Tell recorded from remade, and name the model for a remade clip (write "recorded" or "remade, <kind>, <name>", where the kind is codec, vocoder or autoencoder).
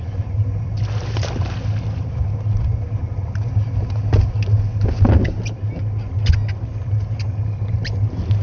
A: recorded